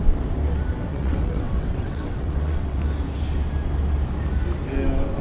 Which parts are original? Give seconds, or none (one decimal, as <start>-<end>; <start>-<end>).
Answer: 0.0-0.9; 2.8-5.2